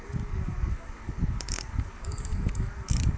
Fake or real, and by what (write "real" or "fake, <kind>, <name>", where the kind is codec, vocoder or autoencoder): fake, codec, DAC